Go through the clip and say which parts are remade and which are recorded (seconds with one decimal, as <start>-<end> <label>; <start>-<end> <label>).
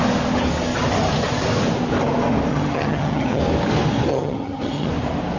0.0-2.5 recorded; 2.5-3.4 remade; 3.4-4.1 recorded; 4.1-4.9 remade; 4.9-5.4 recorded